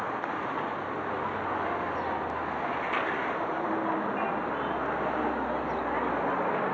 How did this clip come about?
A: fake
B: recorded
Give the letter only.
B